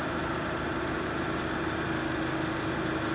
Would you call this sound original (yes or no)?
yes